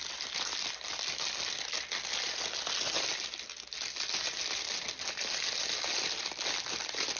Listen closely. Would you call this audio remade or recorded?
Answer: recorded